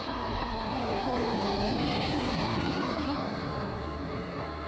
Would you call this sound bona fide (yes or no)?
no